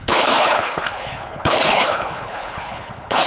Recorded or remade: remade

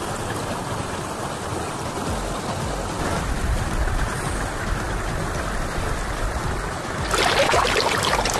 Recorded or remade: recorded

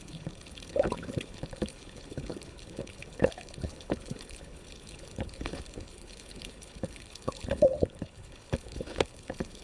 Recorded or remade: remade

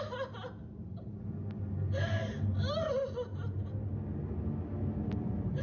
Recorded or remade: recorded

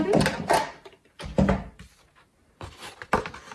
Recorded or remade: recorded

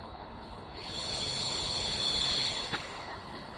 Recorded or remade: remade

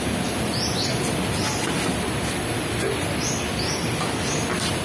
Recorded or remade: recorded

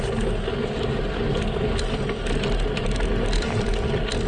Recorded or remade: recorded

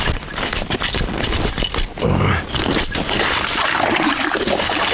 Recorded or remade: recorded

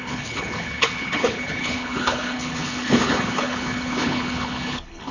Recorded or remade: remade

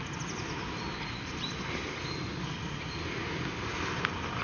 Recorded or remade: recorded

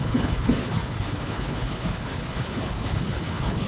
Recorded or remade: remade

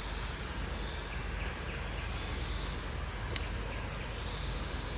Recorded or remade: recorded